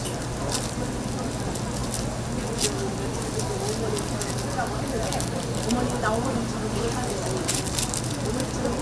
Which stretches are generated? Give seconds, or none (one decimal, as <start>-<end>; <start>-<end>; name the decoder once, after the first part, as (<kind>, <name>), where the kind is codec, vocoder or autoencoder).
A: none